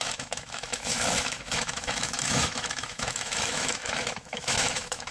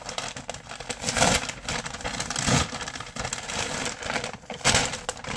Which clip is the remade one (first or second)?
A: first